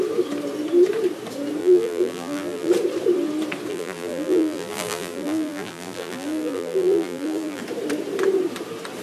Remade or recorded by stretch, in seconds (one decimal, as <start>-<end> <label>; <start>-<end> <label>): 0.0-1.6 recorded; 1.6-2.7 remade; 2.7-3.7 recorded; 3.7-7.6 remade; 7.6-9.0 recorded